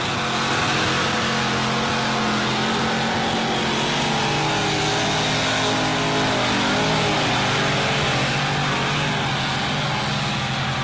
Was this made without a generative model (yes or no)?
yes